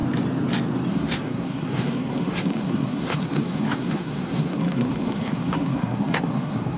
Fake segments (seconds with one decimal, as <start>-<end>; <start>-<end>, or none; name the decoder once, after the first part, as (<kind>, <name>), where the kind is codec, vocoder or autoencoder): 0.9-6.8 (codec, SNAC)